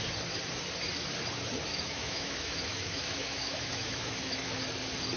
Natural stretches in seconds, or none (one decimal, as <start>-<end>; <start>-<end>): 0.0-1.7; 4.6-5.2